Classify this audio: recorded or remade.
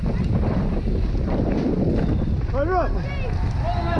recorded